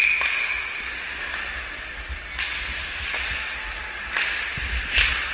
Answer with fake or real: real